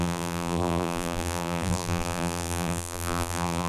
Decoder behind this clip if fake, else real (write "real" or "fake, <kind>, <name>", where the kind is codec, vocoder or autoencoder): fake, vocoder, BigVGAN v2